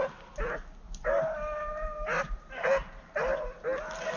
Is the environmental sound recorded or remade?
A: recorded